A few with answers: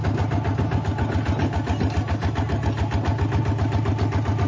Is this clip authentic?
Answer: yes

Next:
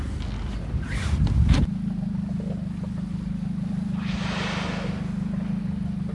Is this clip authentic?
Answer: yes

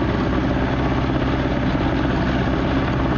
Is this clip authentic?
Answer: yes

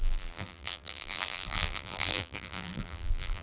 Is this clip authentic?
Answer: no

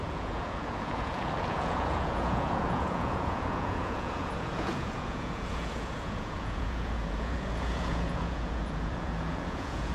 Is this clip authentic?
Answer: no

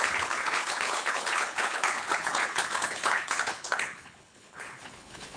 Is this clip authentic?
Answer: no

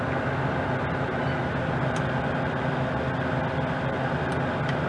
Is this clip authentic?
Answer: yes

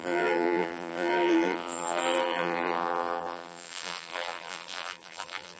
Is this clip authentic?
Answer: no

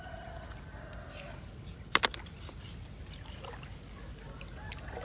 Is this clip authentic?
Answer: yes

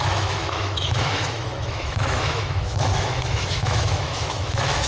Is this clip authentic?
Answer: no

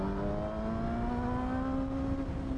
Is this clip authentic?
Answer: yes